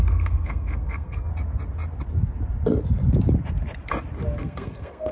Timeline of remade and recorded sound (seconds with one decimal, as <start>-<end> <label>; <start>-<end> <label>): 0.0-1.3 remade; 1.3-4.4 recorded; 4.4-5.1 remade